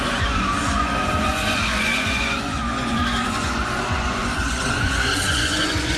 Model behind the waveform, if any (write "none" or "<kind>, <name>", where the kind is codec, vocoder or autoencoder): vocoder, Vocos